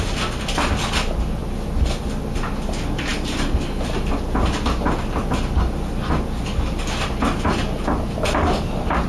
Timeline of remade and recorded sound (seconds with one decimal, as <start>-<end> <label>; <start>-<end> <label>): 0.0-9.1 recorded